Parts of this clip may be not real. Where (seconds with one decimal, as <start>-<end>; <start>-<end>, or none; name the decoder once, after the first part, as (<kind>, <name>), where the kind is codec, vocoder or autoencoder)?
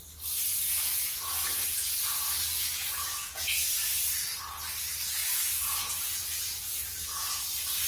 0.5-3.7 (vocoder, Vocos); 5.2-7.4